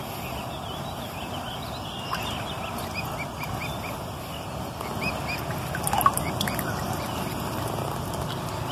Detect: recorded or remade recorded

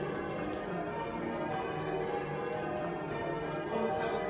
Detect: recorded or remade remade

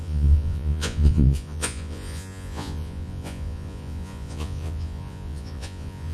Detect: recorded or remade remade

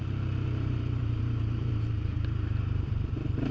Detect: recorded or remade remade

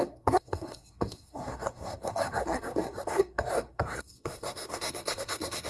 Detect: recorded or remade remade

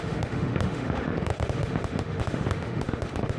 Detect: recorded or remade remade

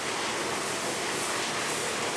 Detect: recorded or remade recorded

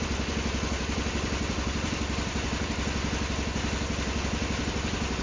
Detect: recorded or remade remade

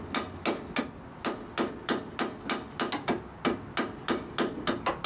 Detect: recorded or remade recorded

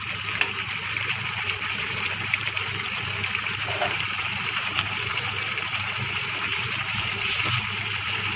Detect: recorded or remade remade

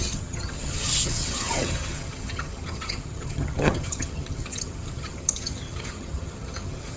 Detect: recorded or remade remade